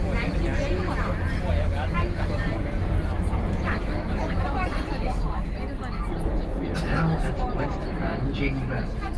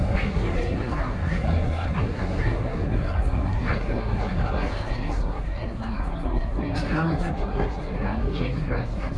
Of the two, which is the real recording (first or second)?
first